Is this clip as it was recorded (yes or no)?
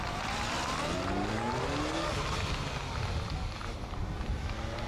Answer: yes